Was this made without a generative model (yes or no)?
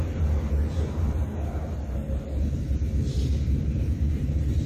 no